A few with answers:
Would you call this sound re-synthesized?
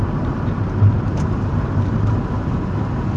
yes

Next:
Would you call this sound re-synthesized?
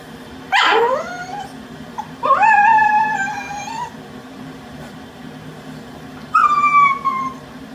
yes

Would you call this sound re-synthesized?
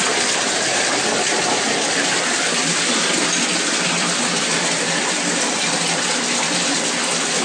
yes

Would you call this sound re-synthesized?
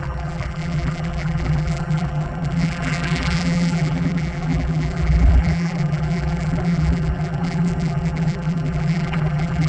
yes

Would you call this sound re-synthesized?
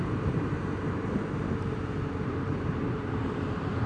yes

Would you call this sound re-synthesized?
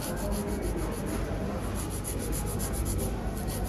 no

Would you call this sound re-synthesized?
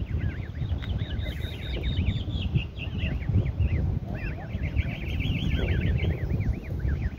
no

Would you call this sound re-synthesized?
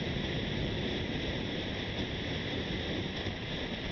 yes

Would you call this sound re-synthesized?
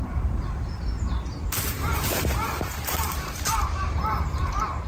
yes